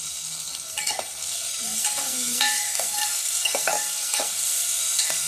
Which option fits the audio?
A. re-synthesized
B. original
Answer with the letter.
A